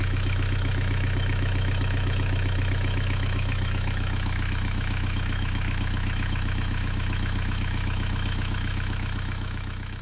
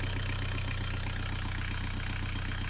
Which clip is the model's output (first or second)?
first